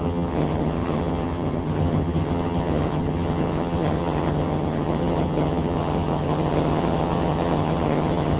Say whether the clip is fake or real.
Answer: fake